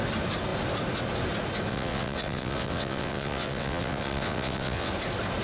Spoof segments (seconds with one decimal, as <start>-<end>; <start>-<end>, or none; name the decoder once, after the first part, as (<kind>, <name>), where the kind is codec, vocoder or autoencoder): 1.7-4.9 (vocoder, WaveNeXt)